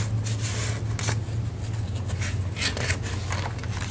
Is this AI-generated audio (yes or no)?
no